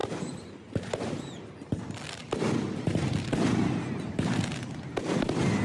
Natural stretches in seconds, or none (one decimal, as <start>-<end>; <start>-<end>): 1.8-5.6